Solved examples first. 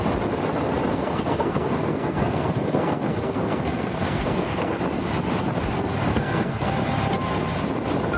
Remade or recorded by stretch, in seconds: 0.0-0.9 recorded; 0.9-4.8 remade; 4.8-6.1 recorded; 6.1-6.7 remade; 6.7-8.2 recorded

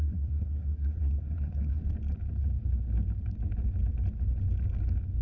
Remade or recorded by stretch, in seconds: 0.0-1.8 remade; 1.8-5.2 recorded

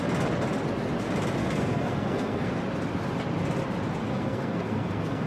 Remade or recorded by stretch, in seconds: 0.0-1.4 recorded; 1.4-2.6 remade; 2.6-4.0 recorded; 4.0-5.3 remade

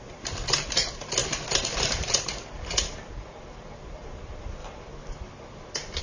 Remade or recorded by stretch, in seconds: 0.0-6.0 recorded

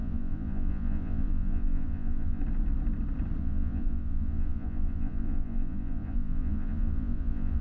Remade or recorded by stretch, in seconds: 0.0-2.4 remade; 2.4-3.4 recorded; 3.4-7.6 remade

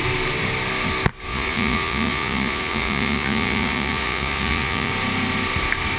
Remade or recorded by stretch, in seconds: 0.0-1.3 recorded; 1.3-4.9 remade; 4.9-6.0 recorded

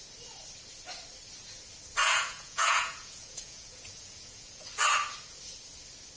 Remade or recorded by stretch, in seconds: 0.0-2.0 recorded; 2.0-4.7 remade; 4.7-6.2 recorded

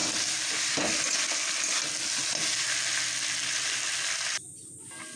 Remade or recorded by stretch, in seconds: 0.0-5.2 recorded